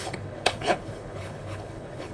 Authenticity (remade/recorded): remade